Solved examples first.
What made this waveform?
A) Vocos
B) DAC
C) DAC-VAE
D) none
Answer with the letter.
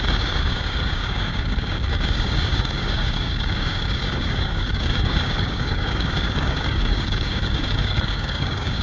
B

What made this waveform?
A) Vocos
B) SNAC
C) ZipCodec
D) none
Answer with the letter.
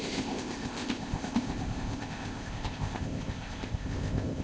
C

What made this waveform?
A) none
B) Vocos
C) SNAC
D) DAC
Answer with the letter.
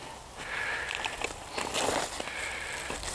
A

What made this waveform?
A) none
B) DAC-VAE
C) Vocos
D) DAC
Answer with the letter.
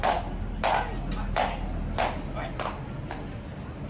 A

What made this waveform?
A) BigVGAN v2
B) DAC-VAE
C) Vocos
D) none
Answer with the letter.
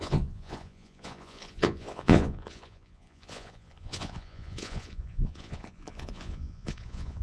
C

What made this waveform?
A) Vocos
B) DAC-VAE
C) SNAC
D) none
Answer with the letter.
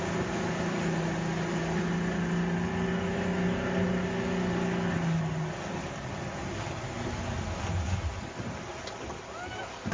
D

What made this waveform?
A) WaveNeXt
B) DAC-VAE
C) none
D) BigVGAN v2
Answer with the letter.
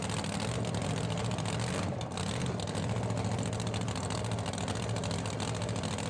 C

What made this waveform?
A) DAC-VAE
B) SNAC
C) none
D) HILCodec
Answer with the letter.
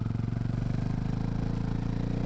C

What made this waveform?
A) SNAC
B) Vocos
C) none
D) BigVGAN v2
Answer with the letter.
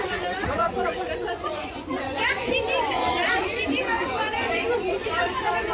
B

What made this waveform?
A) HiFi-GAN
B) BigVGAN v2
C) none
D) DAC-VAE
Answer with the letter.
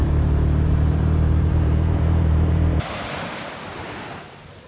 B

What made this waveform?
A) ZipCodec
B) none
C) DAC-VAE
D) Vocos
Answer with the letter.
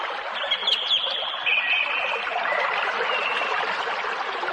B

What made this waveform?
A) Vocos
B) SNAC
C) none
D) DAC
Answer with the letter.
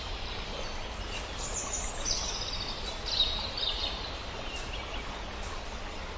C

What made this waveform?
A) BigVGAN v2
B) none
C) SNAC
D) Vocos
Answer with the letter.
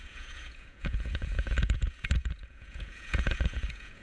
D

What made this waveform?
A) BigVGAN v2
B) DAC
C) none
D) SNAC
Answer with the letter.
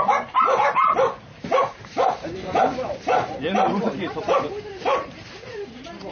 A